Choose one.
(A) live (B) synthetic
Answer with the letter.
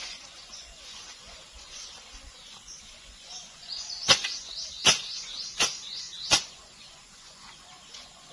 B